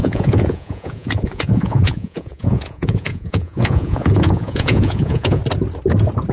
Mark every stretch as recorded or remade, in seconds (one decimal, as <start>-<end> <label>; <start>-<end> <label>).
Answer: 0.0-5.4 remade; 5.4-6.3 recorded

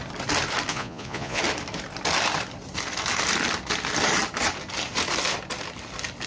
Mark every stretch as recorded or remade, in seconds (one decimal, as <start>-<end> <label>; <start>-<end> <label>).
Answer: 0.0-0.7 recorded; 0.7-1.4 remade; 1.4-6.3 recorded

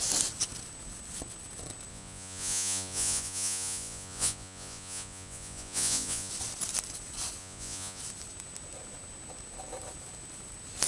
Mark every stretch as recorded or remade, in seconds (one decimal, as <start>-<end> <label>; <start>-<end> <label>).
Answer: 0.0-1.9 recorded; 1.9-6.3 remade; 6.3-7.4 recorded; 7.4-8.0 remade; 8.0-10.9 recorded

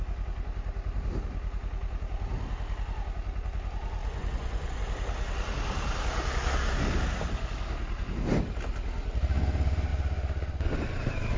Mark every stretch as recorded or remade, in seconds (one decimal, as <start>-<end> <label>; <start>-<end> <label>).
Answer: 0.0-4.0 recorded; 4.0-4.8 remade; 4.8-11.4 recorded

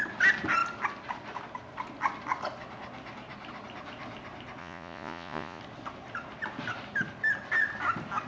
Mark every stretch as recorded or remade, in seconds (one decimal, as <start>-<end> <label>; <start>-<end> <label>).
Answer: 0.0-4.6 recorded; 4.6-5.6 remade; 5.6-8.3 recorded

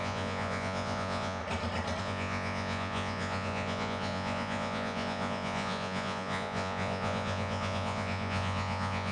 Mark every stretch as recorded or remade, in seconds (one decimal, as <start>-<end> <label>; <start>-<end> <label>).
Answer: 0.0-1.4 remade; 1.4-2.0 recorded; 2.0-9.1 remade

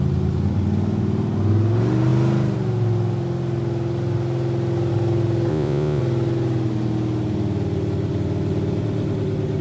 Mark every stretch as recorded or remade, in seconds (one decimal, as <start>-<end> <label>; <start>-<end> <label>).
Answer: 0.0-5.5 recorded; 5.5-6.0 remade; 6.0-9.6 recorded

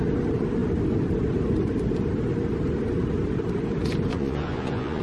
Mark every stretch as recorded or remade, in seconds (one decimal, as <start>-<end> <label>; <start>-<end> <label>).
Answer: 0.0-4.1 recorded; 4.1-5.0 remade